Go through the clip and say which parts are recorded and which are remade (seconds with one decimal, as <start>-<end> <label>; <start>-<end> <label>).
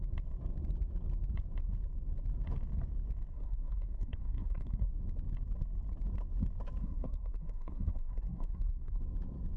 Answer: 0.0-3.3 recorded; 3.3-4.9 remade; 4.9-6.8 recorded; 6.8-9.0 remade; 9.0-9.6 recorded